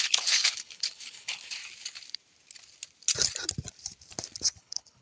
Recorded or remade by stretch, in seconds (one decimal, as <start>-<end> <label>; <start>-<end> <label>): 0.0-1.6 remade; 1.6-4.6 recorded; 4.6-5.0 remade